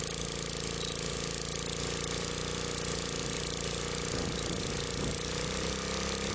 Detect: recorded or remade recorded